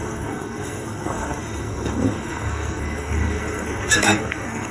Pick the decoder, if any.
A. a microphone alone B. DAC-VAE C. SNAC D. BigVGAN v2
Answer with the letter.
C